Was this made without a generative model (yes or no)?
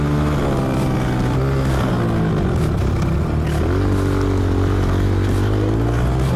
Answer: yes